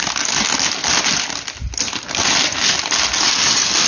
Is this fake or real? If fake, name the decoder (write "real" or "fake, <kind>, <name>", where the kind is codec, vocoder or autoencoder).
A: real